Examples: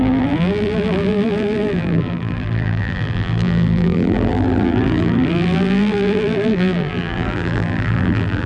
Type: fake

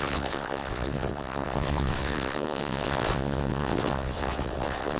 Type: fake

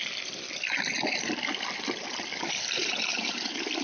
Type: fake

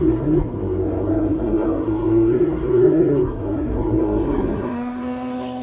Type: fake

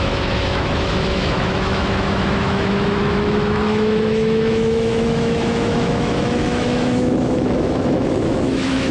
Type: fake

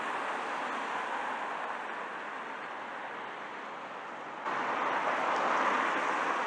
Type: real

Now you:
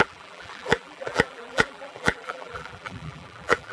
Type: fake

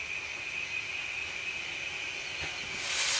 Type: real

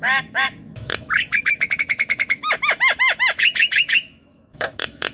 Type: fake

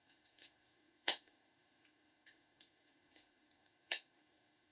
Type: fake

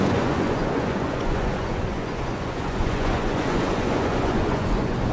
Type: fake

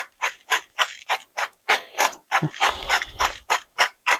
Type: fake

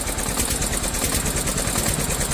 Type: real